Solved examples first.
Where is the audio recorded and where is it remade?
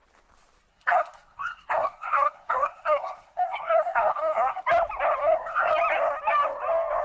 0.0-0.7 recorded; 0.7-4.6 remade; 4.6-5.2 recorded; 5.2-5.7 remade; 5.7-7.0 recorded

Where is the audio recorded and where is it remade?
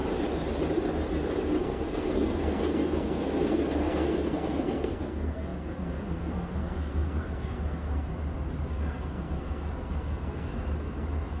0.0-1.6 recorded; 1.6-8.1 remade; 8.1-8.7 recorded; 8.7-11.4 remade